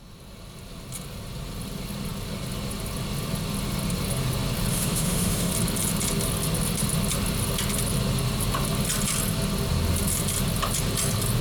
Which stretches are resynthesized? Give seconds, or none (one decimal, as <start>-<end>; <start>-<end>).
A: 4.7-5.5